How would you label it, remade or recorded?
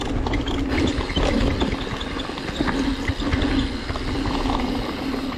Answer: recorded